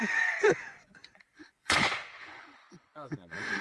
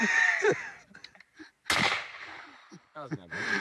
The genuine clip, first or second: second